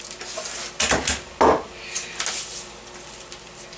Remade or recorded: recorded